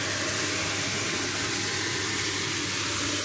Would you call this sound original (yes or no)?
yes